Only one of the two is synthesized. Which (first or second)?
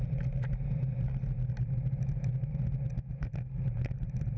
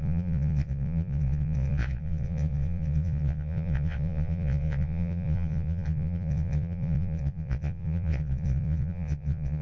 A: second